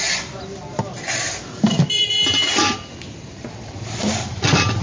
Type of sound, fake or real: real